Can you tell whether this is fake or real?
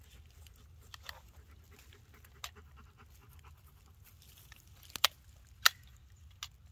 real